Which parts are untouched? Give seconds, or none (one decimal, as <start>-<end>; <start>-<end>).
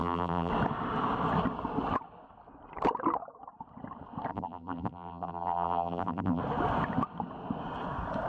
0.5-4.3; 6.4-8.3